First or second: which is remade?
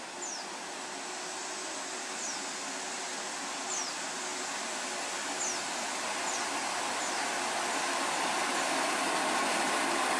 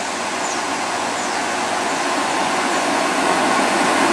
second